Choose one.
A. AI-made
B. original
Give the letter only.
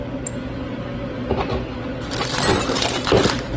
B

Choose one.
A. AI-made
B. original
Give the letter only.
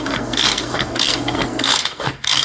A